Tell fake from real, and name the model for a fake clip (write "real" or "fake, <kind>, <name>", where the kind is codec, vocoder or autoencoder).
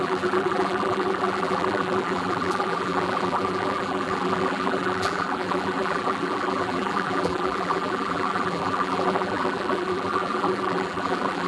fake, vocoder, BigVGAN v2